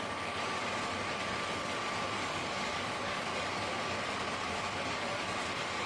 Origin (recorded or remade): remade